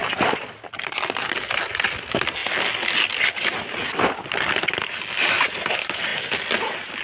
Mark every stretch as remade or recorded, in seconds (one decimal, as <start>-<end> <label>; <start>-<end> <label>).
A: 0.0-7.0 recorded